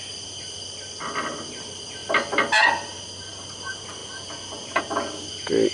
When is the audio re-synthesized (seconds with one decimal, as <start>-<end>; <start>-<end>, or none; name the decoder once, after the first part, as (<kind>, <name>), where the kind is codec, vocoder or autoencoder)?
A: none